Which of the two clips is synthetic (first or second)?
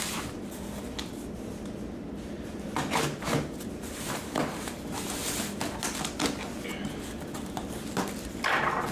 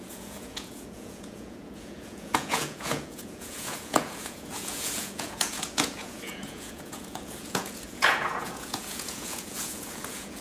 second